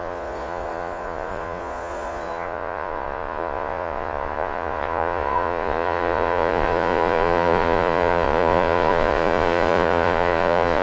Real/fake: fake